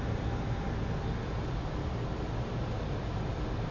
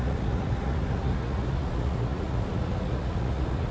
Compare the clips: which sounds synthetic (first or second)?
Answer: second